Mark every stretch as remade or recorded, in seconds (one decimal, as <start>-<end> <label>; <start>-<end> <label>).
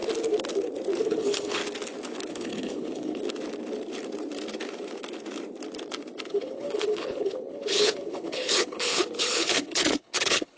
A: 0.0-1.0 recorded; 1.0-1.6 remade; 1.6-2.3 recorded; 2.3-3.2 remade; 3.2-6.3 recorded; 6.3-10.6 remade